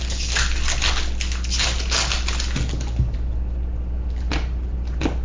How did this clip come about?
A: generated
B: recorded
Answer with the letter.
B